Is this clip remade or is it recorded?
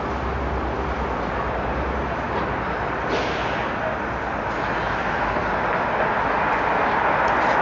recorded